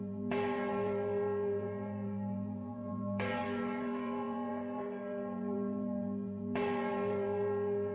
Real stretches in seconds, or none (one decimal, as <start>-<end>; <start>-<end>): none